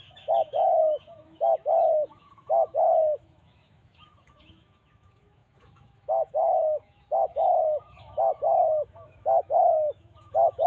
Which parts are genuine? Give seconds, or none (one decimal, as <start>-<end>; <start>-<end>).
none